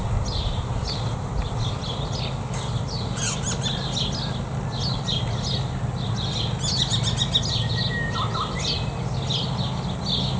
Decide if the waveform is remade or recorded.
recorded